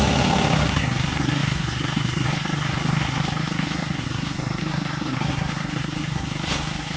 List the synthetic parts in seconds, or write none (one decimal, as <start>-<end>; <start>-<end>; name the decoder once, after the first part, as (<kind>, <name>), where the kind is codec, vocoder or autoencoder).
0.0-7.0 (codec, SNAC)